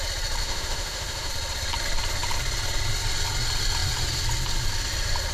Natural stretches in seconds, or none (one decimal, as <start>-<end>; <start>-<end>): 0.0-0.4; 1.3-5.3